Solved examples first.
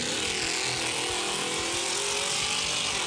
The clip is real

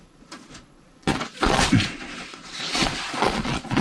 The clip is fake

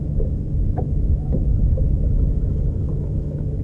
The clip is fake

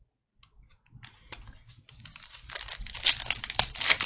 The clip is real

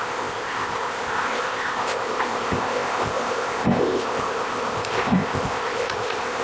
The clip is fake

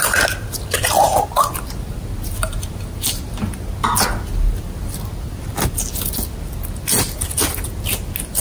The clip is real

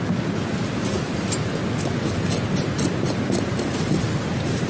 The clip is real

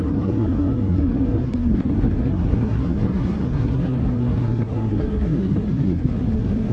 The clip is fake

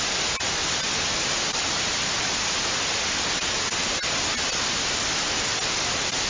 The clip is real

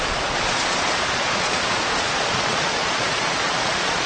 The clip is fake